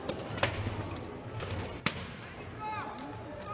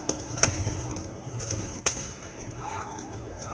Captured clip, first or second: first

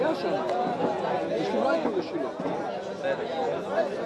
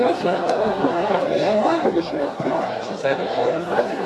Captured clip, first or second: first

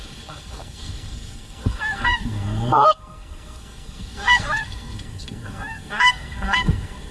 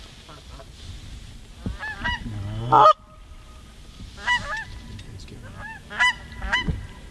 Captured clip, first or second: second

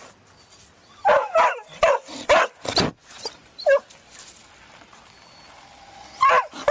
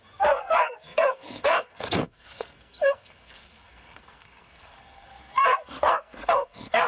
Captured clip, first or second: first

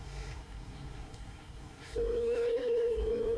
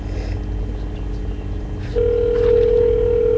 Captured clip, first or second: second